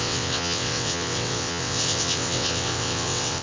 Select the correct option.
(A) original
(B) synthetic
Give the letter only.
B